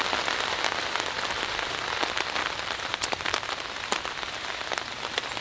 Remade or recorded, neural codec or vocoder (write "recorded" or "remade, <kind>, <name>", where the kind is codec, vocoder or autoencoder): remade, vocoder, BigVGAN v2